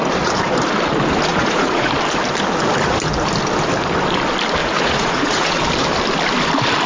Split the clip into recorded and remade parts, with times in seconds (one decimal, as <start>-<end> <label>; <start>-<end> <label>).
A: 0.0-1.3 recorded; 1.3-1.9 remade; 1.9-4.6 recorded; 4.6-5.6 remade; 5.6-6.9 recorded